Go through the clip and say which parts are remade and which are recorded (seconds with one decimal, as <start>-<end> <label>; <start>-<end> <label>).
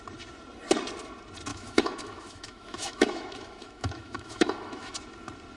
0.0-1.5 recorded; 1.5-4.9 remade; 4.9-5.6 recorded